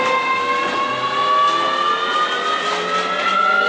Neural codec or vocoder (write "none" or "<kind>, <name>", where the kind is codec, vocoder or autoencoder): none